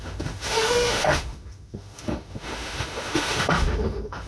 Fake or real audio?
fake